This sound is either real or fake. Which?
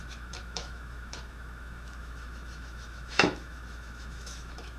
fake